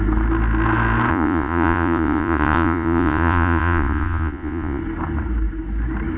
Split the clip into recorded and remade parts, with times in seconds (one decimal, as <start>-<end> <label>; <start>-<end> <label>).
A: 0.0-1.1 recorded; 1.1-4.8 remade; 4.8-6.2 recorded